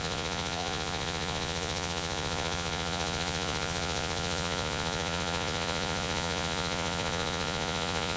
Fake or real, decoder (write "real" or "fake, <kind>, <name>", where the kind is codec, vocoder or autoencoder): fake, vocoder, Vocos